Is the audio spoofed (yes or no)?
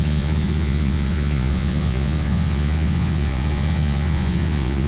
yes